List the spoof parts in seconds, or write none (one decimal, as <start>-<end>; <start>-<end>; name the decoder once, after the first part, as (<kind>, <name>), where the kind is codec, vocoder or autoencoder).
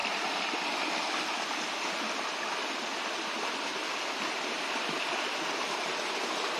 none